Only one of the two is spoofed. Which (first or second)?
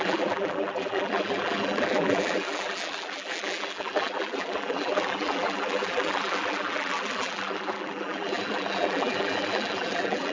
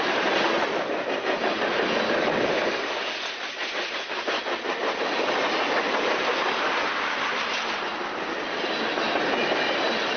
first